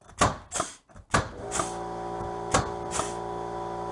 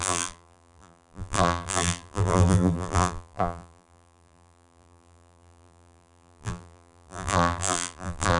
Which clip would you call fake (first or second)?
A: second